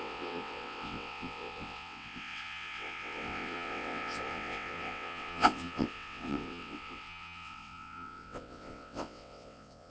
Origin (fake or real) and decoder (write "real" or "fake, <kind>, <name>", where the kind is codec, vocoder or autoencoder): fake, vocoder, WaveNeXt